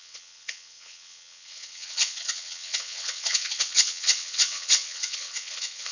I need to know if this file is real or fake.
fake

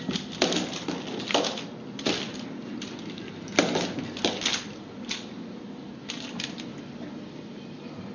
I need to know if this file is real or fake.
real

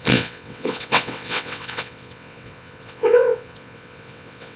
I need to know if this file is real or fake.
fake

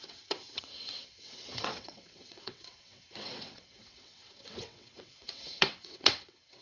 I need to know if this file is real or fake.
fake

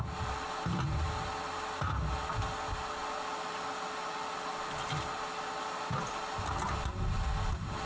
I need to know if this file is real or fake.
real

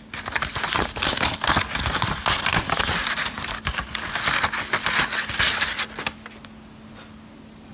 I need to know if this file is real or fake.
real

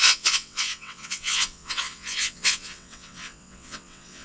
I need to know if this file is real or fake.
fake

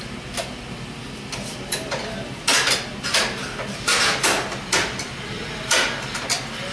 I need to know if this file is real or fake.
real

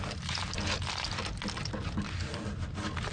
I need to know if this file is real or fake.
real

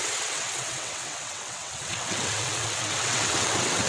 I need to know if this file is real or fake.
fake